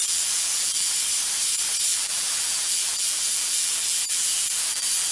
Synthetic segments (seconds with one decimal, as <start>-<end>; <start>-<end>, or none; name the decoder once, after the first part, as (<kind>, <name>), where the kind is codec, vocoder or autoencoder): 0.0-0.9 (vocoder, BigVGAN v2); 1.9-5.1